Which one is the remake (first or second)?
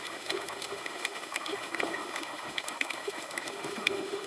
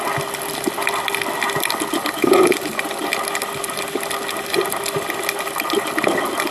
first